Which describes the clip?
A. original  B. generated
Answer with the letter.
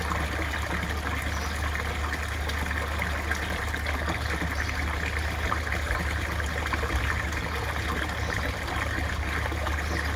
A